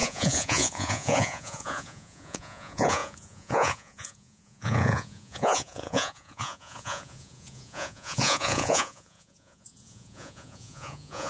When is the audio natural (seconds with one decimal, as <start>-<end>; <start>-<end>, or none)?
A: none